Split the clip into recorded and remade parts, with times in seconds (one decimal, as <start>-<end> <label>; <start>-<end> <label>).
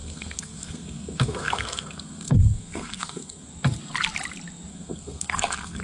0.0-3.5 remade; 3.5-4.7 recorded; 4.7-5.8 remade